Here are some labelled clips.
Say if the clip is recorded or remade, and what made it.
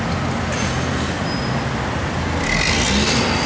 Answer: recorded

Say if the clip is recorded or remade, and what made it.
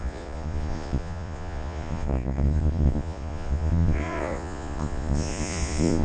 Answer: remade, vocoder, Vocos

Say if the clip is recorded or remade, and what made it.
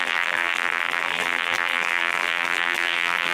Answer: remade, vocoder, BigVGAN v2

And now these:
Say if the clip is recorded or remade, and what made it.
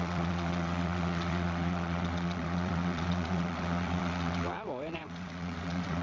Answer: remade, vocoder, WaveNeXt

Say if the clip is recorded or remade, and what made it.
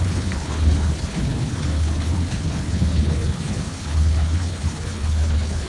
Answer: remade, codec, HILCodec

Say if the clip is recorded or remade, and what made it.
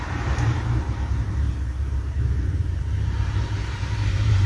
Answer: remade, vocoder, BigVGAN v2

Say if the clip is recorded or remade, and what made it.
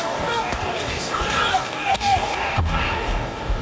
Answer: remade, codec, DAC